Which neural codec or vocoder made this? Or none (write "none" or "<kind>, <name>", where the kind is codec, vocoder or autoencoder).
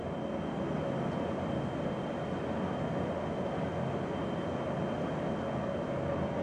none